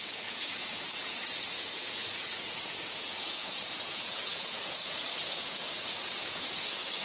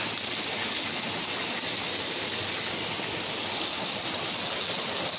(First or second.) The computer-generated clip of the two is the first